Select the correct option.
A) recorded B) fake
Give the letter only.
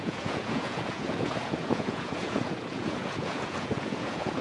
B